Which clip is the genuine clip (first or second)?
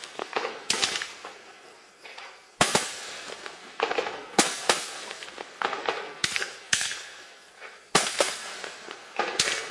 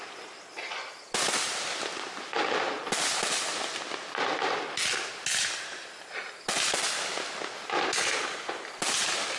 second